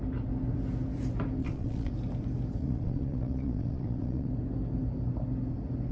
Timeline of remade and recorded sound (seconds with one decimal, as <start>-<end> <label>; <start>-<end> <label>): 0.0-1.4 recorded; 1.4-1.9 remade; 1.9-2.6 recorded; 2.6-4.3 remade; 4.3-5.9 recorded